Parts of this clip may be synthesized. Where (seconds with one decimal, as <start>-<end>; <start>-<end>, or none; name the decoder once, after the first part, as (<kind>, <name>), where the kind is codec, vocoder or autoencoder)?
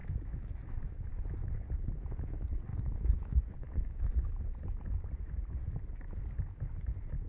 0.0-1.1 (autoencoder, DAC-VAE); 2.7-4.1